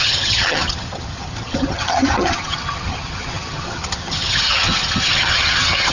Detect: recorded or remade remade